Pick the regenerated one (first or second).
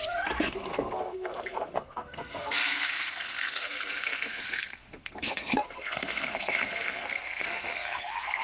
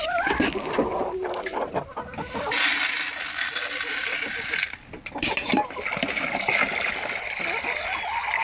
first